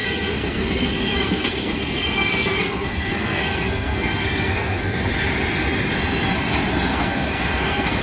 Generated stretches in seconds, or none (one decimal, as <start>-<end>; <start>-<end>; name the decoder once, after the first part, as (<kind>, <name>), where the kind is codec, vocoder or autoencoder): 0.0-4.8 (codec, SNAC); 6.9-8.0